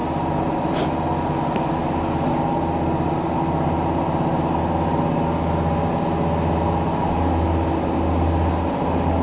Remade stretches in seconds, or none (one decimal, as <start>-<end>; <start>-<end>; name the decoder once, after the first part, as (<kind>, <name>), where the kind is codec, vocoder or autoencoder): none